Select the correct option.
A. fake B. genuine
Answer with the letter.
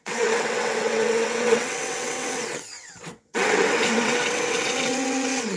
A